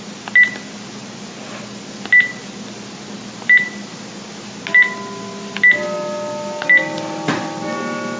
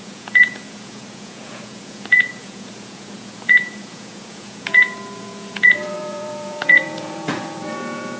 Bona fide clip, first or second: first